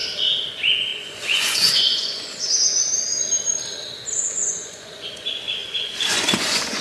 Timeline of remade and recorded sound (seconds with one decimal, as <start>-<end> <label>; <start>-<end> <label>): 0.0-0.5 recorded; 0.5-2.3 remade; 2.3-4.3 recorded; 4.3-6.8 remade